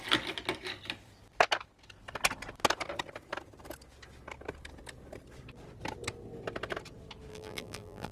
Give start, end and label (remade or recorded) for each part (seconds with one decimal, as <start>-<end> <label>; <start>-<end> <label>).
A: 0.0-7.3 recorded; 7.3-8.1 remade